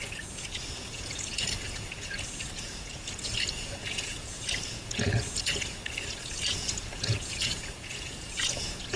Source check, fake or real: fake